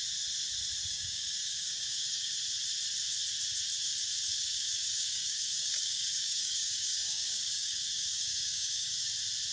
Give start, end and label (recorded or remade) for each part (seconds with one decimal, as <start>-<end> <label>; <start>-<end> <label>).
0.0-0.9 recorded; 0.9-2.3 remade; 2.3-4.3 recorded; 4.3-9.1 remade; 9.1-9.5 recorded